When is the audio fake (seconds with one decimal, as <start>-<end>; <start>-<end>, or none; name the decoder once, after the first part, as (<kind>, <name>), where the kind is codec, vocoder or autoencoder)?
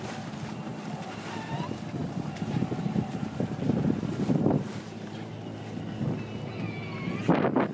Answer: 0.7-5.3 (vocoder, BigVGAN v2)